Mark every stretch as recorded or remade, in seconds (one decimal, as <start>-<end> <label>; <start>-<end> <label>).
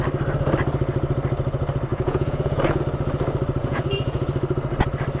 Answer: 0.0-1.9 recorded; 1.9-2.8 remade; 2.8-3.6 recorded; 3.6-4.2 remade; 4.2-5.2 recorded